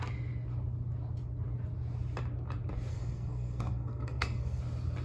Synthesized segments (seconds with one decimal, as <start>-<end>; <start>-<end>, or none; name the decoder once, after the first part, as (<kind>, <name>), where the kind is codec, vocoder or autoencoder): 2.9-4.6 (codec, SNAC)

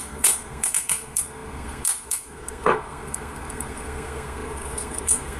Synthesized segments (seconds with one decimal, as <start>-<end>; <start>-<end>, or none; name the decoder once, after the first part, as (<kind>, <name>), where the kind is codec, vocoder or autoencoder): 0.0-5.4 (codec, SNAC)

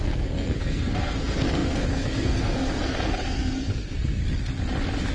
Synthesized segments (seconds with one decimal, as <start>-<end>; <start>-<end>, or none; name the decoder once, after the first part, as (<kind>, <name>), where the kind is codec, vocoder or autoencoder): 0.0-4.2 (codec, SNAC)

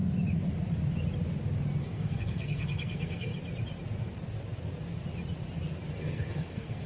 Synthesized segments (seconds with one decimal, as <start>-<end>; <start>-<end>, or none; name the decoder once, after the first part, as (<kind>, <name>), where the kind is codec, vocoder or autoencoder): 1.8-3.3 (codec, SNAC); 6.0-6.9

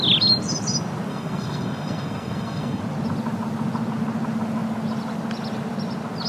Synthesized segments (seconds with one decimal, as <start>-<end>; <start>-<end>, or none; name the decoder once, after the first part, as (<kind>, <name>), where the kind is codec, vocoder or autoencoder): 1.1-2.8 (codec, SNAC)

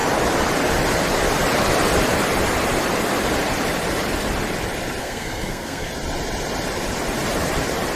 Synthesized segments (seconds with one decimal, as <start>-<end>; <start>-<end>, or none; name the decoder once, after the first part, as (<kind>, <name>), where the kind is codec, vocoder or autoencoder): 5.0-5.9 (codec, SNAC)

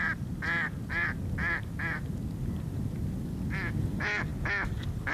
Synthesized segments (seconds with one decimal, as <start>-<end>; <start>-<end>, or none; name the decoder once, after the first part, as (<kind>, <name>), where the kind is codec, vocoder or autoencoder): none